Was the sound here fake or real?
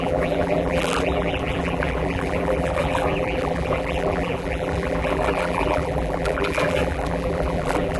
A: fake